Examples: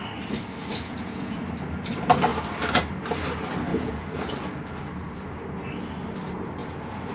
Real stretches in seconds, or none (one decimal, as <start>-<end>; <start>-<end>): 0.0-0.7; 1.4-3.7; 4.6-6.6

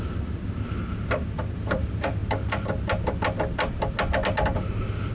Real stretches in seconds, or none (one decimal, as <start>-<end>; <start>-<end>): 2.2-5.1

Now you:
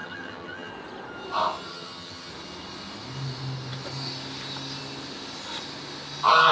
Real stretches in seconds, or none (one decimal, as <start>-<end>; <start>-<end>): 0.7-1.7; 2.3-6.5